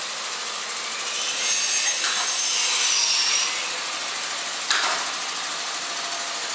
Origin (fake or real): real